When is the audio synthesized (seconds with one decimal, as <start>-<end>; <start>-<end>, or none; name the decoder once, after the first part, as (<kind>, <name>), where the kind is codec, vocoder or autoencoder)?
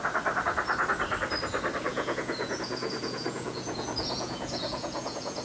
1.9-5.4 (vocoder, Vocos)